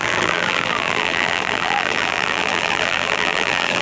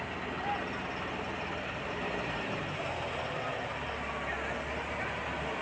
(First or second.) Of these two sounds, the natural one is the second